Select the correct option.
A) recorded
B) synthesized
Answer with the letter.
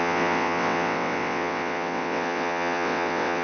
B